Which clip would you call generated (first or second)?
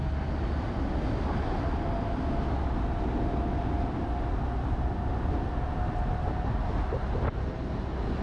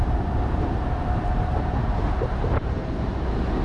second